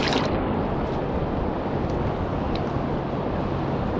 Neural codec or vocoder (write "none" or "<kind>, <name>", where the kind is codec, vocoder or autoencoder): none